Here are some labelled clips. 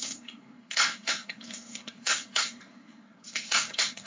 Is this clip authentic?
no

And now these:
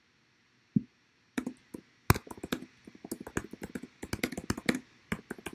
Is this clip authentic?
yes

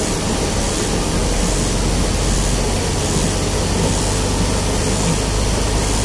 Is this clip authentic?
yes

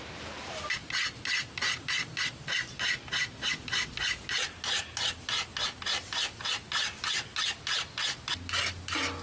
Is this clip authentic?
yes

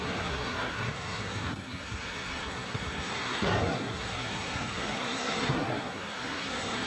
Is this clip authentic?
no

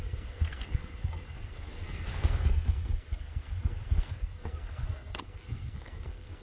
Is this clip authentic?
no